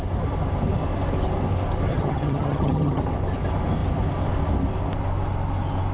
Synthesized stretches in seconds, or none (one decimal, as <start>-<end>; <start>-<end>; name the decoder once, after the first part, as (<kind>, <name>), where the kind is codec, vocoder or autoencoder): 1.9-3.0 (vocoder, HiFi-GAN)